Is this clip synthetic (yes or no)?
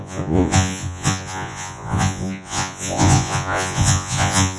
yes